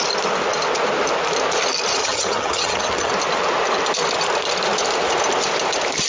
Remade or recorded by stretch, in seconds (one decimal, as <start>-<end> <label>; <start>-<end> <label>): 0.0-2.0 recorded; 2.0-3.1 remade; 3.1-6.1 recorded